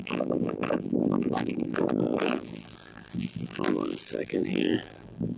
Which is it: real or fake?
fake